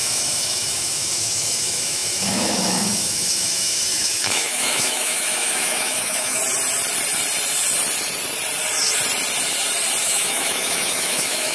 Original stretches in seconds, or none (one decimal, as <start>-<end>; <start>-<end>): 6.4-10.0

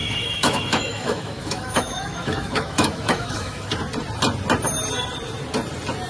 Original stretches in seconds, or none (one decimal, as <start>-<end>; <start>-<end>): 3.7-6.1

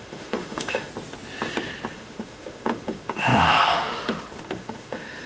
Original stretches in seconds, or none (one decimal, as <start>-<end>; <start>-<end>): 0.9-1.9

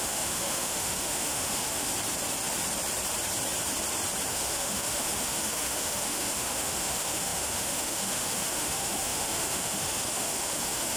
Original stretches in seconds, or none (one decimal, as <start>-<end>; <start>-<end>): 1.9-4.3

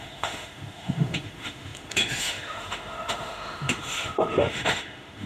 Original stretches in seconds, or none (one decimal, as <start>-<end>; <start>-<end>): none